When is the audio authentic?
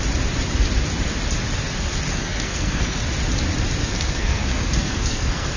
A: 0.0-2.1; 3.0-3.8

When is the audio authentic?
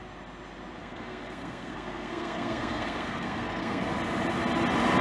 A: 0.0-0.8; 3.8-5.0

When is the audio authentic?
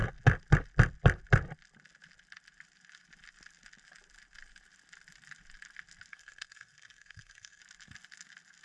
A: 0.0-6.1; 7.6-8.6